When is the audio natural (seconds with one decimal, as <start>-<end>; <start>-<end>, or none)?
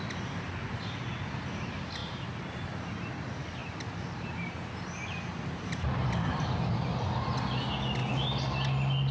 0.0-2.0; 2.6-3.6; 6.5-9.1